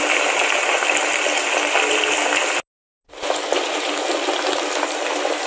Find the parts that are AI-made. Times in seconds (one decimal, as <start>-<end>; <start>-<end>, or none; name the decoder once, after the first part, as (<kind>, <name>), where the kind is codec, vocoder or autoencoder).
none